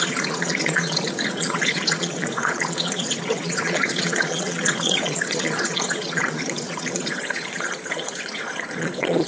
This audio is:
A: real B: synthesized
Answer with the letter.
B